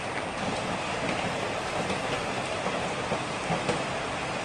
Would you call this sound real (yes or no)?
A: yes